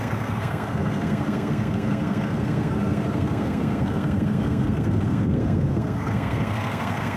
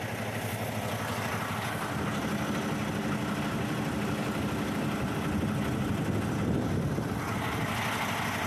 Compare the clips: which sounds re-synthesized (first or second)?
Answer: first